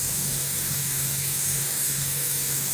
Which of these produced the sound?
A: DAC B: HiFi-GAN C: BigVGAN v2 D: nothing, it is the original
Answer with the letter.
A